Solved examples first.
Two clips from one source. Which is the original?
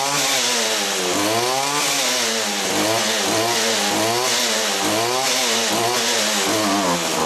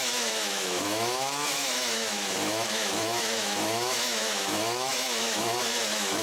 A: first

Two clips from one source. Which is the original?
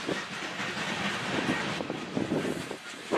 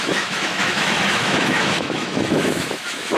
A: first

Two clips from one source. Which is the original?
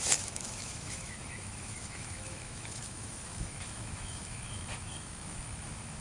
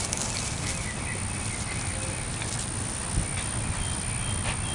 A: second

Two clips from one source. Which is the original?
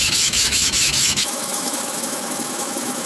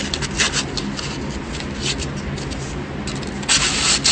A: second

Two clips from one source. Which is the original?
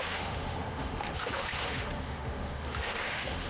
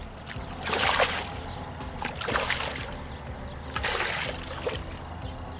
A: second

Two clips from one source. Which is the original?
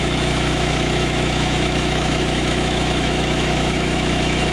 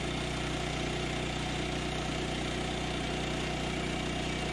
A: second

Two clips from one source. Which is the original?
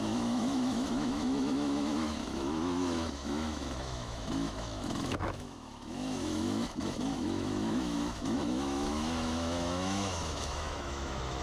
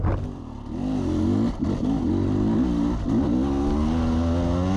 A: second